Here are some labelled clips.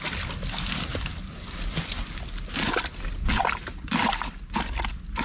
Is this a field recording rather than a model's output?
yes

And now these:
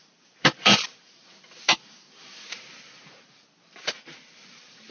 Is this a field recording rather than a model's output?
no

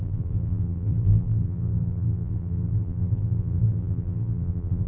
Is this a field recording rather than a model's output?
no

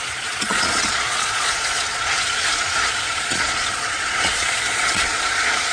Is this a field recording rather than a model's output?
no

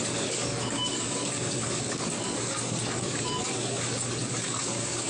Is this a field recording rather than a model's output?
no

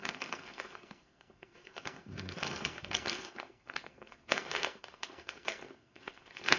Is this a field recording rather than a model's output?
no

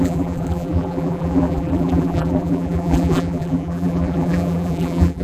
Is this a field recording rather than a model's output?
no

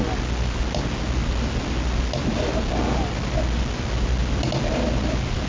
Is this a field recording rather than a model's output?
yes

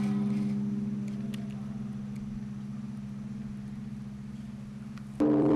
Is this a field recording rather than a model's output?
no